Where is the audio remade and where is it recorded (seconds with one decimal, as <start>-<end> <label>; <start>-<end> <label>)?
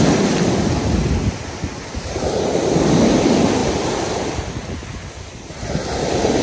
0.0-6.4 recorded